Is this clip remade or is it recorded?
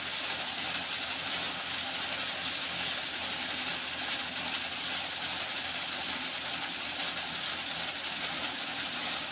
recorded